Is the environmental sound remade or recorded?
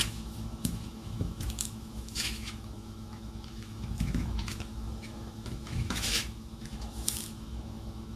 remade